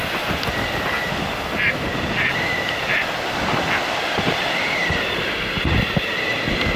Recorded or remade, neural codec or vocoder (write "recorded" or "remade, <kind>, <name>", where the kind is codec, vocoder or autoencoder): recorded